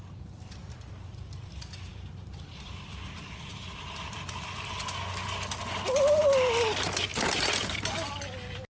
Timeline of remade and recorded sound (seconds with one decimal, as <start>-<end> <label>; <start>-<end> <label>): 0.0-1.9 recorded; 1.9-4.3 remade; 4.3-7.1 recorded; 7.1-8.1 remade; 8.1-8.7 recorded